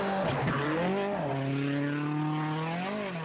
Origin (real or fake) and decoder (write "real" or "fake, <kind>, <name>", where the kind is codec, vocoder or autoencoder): real